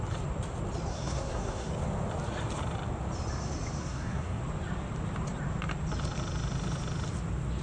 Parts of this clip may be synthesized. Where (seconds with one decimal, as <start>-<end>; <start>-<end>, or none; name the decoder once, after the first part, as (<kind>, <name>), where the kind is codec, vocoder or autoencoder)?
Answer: 0.9-1.7 (codec, SNAC); 3.8-4.4